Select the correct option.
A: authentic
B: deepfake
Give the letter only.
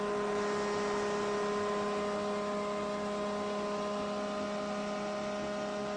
A